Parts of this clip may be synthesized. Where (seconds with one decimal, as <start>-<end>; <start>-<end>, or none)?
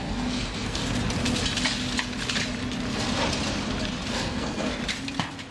0.0-0.8; 4.1-4.8